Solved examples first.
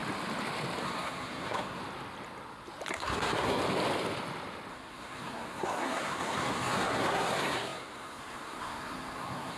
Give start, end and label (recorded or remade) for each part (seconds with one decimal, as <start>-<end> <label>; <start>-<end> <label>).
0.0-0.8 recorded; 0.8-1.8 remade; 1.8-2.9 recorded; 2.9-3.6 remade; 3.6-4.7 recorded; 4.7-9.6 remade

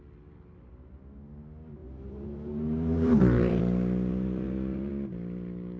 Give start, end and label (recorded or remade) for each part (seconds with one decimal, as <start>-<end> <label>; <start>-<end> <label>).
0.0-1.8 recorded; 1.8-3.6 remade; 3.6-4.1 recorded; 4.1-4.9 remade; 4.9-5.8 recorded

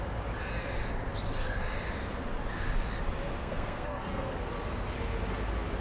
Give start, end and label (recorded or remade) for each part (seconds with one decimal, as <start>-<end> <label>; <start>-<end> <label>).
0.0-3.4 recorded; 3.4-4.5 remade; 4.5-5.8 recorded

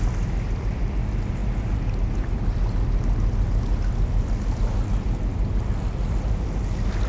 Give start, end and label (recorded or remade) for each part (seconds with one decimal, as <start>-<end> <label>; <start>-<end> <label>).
0.0-7.1 recorded